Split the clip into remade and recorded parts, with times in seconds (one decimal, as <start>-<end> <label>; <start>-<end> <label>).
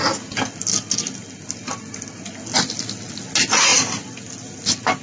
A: 0.0-5.0 recorded